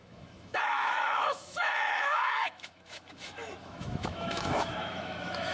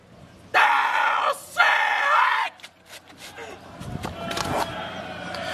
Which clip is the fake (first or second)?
first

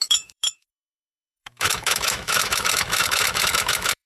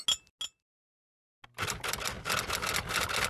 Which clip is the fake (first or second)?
first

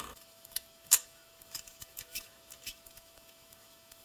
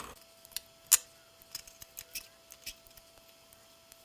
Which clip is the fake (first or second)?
first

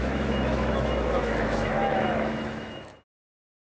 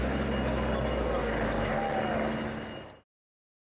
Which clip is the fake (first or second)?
first